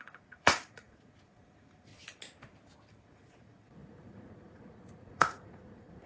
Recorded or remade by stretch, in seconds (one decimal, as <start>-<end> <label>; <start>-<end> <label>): 0.0-1.9 remade; 1.9-3.0 recorded; 3.0-6.1 remade